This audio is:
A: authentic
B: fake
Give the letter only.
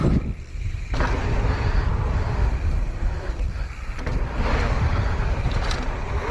B